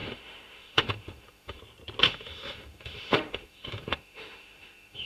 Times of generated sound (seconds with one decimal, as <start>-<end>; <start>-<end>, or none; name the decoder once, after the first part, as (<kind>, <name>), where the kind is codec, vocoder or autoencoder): 0.0-1.6 (autoencoder, DAC-VAE); 2.0-5.1